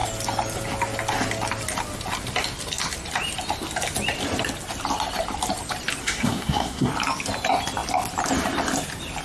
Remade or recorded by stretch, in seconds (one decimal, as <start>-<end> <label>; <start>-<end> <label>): 0.0-6.0 recorded; 6.0-6.9 remade; 6.9-9.2 recorded

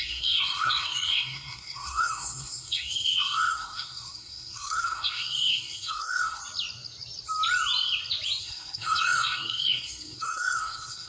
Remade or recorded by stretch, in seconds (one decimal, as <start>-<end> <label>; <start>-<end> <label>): 0.0-6.4 remade; 6.4-8.4 recorded; 8.4-11.1 remade

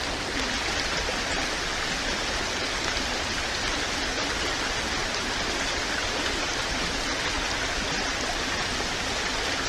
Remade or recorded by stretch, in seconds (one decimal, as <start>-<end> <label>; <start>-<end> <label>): 0.0-9.7 recorded

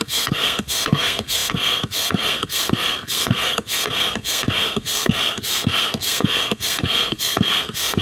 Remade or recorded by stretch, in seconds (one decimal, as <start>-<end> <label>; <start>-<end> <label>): 0.0-8.0 remade

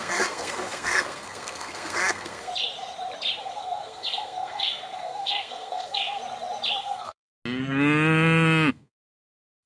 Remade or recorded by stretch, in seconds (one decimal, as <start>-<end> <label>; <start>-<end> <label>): 0.0-2.5 remade; 2.5-3.4 recorded; 3.4-6.2 remade; 6.2-6.8 recorded; 6.8-7.3 remade; 7.3-8.7 recorded; 8.7-9.7 remade

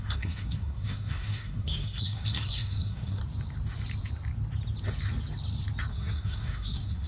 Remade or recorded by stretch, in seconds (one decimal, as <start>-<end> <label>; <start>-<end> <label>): 0.0-3.2 remade; 3.2-5.9 recorded; 5.9-7.1 remade

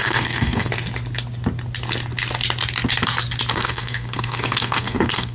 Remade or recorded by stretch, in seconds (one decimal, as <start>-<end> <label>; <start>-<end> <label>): 0.0-0.7 remade; 0.7-3.5 recorded; 3.5-5.3 remade